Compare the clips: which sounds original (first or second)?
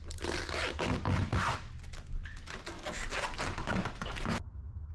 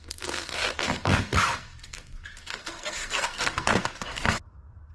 first